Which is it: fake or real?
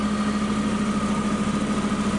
real